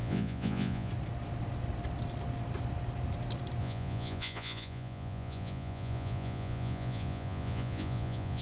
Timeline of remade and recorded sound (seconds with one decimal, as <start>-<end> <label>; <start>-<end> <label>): 0.0-0.9 remade; 0.9-3.6 recorded; 3.6-8.4 remade